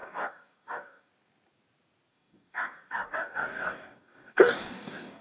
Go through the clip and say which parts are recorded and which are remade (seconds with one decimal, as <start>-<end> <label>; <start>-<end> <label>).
0.0-1.1 remade; 1.1-2.1 recorded; 2.1-5.2 remade